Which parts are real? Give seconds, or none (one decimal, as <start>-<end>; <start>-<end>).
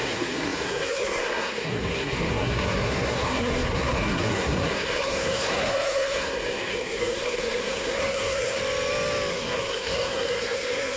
8.6-9.3